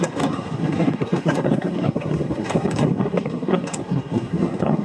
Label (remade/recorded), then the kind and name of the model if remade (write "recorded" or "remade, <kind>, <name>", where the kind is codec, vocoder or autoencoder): remade, codec, SNAC